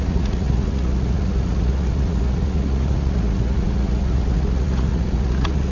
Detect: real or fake fake